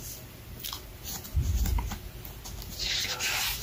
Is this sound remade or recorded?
recorded